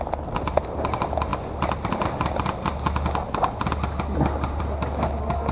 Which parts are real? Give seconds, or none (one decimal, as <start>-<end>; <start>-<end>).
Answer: 0.0-5.5